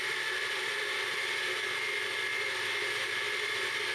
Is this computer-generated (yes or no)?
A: no